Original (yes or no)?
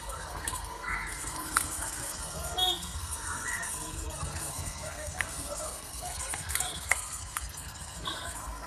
no